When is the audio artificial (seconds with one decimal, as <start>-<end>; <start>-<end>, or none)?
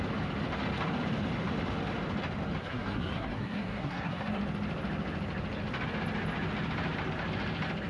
2.6-4.4